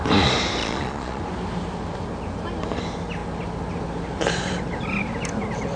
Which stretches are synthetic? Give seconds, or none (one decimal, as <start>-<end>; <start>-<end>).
0.6-1.2